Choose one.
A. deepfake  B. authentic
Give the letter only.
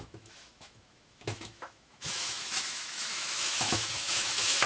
A